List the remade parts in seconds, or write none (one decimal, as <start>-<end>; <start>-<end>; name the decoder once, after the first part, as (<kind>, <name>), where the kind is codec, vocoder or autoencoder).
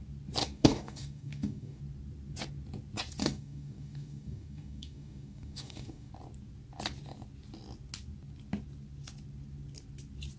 0.4-1.8 (codec, DAC); 3.2-6.1